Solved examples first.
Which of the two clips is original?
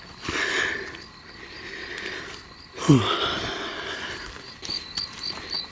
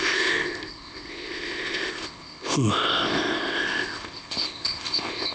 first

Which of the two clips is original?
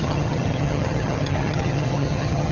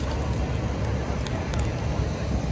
second